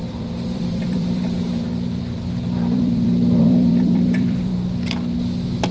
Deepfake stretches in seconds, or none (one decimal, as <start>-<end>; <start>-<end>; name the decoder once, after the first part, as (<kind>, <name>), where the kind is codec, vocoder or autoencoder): 0.0-4.5 (vocoder, BigVGAN v2)